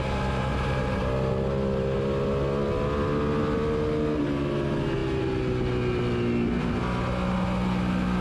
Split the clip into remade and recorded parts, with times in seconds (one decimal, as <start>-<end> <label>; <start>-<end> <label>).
0.0-0.5 recorded; 0.5-1.4 remade; 1.4-8.2 recorded